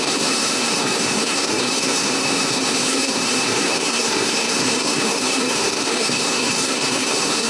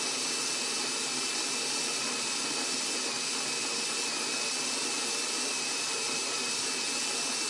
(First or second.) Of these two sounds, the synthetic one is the first